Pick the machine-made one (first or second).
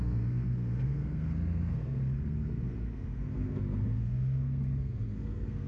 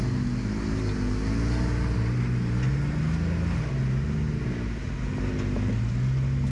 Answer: first